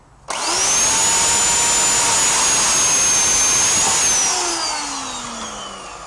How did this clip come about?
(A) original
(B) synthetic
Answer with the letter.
A